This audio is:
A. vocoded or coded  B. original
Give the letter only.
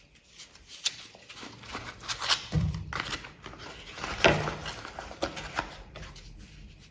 B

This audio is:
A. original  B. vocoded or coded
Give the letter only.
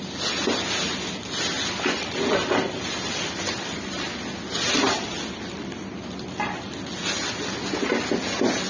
A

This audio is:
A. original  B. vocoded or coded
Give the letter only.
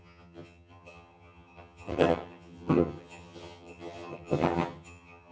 B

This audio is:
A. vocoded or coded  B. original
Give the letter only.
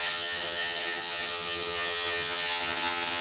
A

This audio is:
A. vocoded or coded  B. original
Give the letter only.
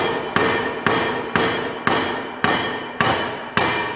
B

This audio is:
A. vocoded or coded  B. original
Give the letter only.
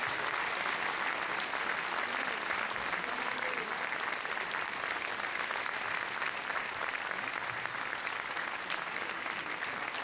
B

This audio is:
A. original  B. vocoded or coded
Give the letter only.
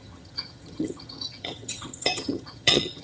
B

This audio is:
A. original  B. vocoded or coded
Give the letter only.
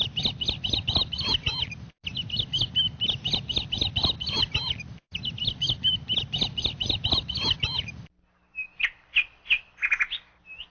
A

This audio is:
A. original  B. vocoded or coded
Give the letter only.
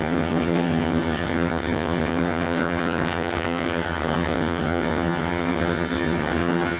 B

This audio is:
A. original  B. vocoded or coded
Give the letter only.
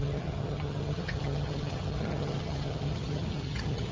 B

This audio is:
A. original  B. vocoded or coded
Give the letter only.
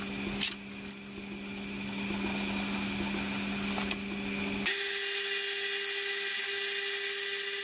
A